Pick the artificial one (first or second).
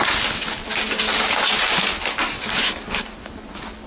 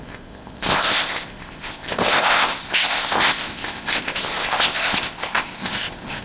second